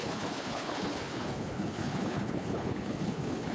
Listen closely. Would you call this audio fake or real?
fake